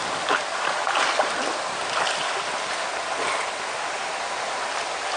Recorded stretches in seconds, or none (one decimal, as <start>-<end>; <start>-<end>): 0.0-5.2